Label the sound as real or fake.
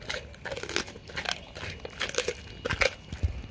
real